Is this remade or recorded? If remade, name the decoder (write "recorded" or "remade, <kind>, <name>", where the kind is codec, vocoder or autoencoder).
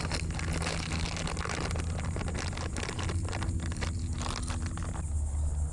recorded